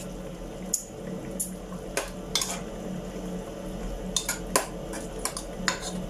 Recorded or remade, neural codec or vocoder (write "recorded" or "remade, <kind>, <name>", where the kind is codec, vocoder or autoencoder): recorded